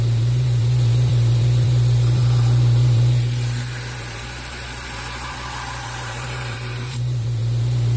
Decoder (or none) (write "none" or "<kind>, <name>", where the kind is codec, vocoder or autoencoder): vocoder, BigVGAN v2